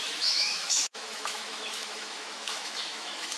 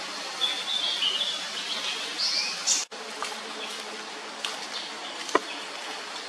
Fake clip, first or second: first